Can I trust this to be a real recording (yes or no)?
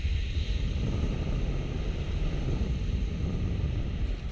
no